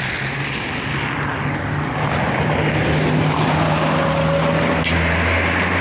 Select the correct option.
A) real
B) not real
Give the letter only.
A